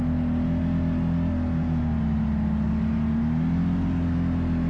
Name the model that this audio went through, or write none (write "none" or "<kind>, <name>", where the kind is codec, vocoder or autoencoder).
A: none